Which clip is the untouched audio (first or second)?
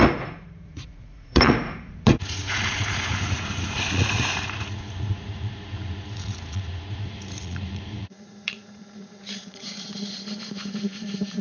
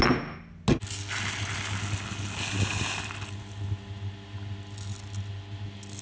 second